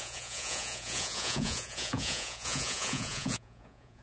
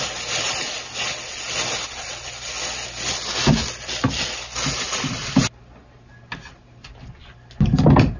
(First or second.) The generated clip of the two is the first